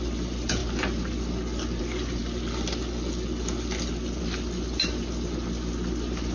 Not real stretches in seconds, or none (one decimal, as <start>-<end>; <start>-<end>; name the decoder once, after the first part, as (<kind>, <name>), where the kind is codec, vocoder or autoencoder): none